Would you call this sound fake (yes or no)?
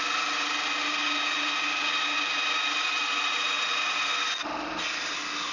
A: no